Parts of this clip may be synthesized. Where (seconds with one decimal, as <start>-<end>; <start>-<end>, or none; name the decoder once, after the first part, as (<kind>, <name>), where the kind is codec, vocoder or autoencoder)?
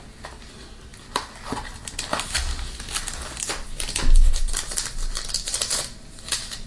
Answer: none